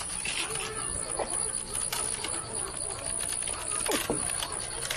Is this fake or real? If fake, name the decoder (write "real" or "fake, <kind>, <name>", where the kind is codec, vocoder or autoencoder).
real